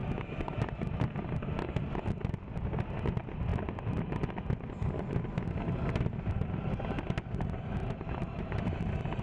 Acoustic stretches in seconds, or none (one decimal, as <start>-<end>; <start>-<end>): 0.5-7.8; 8.6-9.2